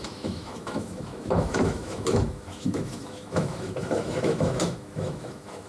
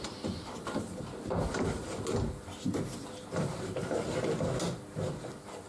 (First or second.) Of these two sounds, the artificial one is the first